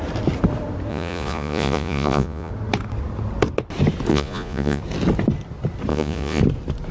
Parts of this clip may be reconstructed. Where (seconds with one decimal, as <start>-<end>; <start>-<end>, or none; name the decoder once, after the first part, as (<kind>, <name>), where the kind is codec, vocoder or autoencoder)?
0.9-2.5 (vocoder, Vocos); 4.1-4.8; 5.9-6.4